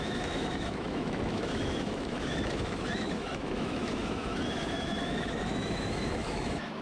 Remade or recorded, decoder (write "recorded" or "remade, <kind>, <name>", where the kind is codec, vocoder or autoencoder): remade, autoencoder, DAC-VAE